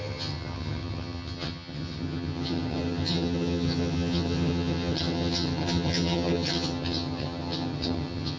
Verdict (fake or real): fake